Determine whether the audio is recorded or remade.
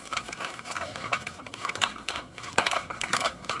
remade